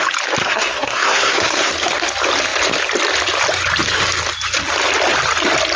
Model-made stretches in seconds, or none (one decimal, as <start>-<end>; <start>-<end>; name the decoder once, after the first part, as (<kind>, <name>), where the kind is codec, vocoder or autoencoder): 0.4-1.7 (codec, SNAC)